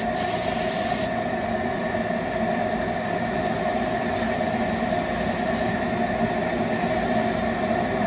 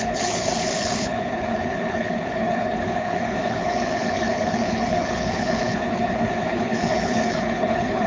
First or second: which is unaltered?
first